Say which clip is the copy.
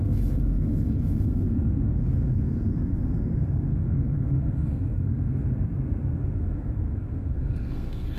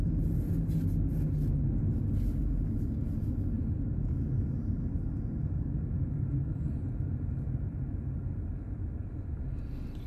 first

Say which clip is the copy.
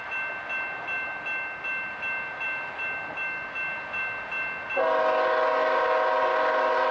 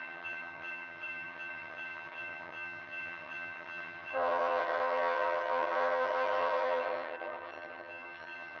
second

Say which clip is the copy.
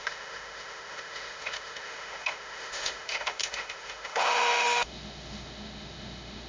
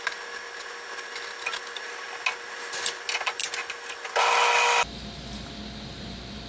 first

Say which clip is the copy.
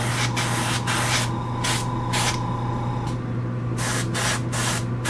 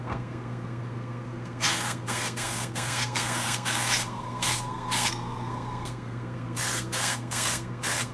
second